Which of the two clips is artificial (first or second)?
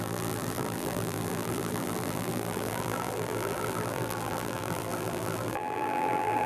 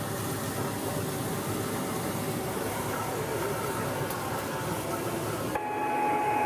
first